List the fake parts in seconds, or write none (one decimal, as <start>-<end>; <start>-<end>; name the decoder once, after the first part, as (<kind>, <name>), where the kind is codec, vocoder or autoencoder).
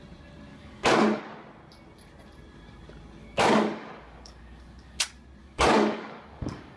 0.5-1.2 (codec, DAC); 3.2-5.0; 5.4-6.8